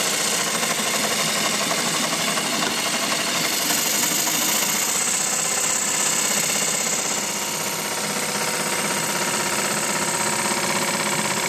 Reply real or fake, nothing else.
real